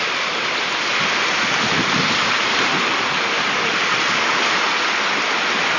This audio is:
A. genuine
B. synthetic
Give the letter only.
A